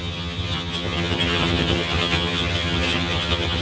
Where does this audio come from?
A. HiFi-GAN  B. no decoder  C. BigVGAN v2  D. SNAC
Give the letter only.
A